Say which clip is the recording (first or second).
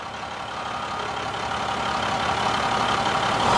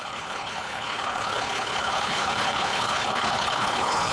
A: first